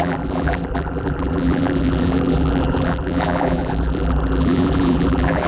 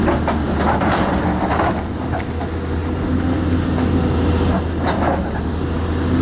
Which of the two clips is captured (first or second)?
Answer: second